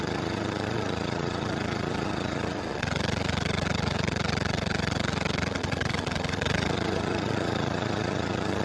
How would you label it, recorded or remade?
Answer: remade